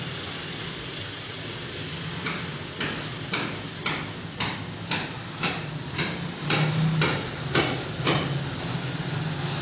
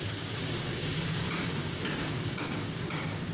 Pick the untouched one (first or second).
first